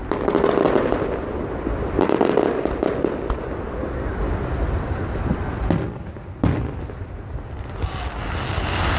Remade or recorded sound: recorded